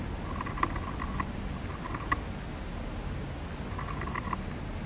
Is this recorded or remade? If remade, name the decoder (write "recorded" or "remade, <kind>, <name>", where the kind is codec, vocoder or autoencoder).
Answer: recorded